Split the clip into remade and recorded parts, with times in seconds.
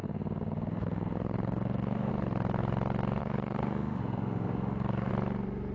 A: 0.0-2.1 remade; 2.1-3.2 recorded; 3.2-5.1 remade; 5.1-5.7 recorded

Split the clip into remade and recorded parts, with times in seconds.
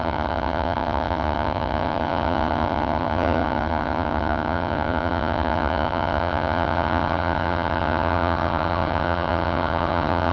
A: 0.0-10.3 remade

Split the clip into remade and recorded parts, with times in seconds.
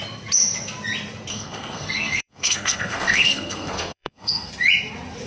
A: 0.0-1.3 recorded; 1.3-4.5 remade; 4.5-5.3 recorded